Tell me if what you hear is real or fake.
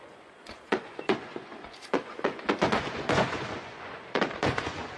fake